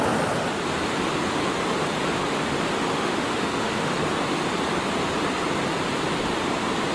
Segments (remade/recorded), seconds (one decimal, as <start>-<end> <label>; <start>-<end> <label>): 0.0-2.9 recorded; 2.9-3.9 remade; 3.9-6.9 recorded